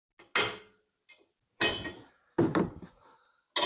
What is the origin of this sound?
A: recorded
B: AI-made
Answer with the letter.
A